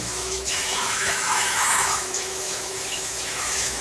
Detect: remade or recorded remade